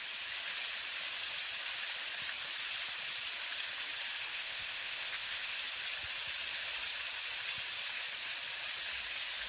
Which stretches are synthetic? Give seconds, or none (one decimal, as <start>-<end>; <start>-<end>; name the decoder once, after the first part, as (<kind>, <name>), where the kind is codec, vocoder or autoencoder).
4.3-5.6 (codec, ZipCodec)